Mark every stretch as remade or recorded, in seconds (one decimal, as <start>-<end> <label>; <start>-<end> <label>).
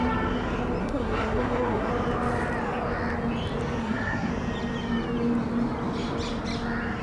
0.0-0.8 recorded; 0.8-1.9 remade; 1.9-3.8 recorded; 3.8-4.3 remade; 4.3-7.0 recorded